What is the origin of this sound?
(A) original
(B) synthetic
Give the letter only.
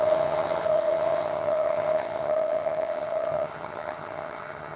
B